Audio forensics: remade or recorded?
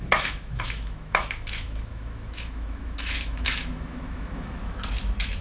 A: remade